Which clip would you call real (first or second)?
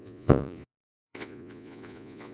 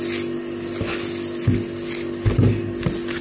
second